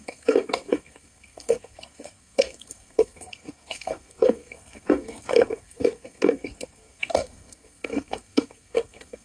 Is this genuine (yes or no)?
no